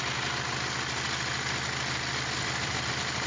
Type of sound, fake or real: real